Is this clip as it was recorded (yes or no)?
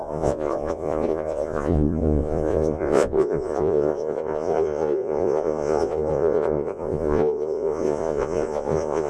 no